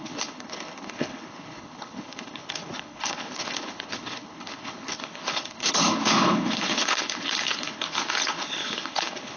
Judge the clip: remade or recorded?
remade